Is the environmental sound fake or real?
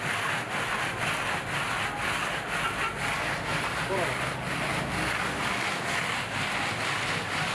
real